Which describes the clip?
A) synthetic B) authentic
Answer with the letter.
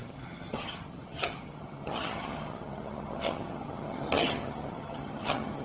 A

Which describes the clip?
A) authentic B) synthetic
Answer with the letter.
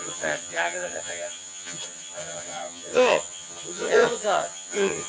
B